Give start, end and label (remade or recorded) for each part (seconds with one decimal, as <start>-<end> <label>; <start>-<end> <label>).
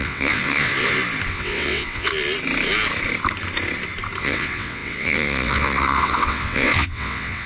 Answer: 0.0-0.7 remade; 0.7-1.3 recorded; 1.3-2.1 remade; 2.1-4.2 recorded; 4.2-7.5 remade